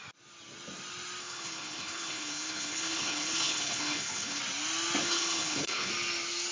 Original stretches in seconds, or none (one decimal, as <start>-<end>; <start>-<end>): 0.0-1.2; 4.4-5.0; 5.9-6.5